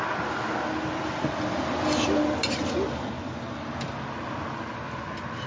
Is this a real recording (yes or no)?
yes